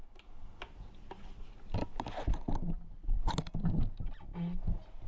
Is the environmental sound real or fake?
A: real